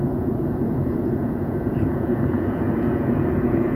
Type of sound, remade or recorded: remade